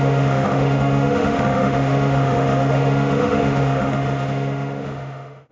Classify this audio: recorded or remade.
remade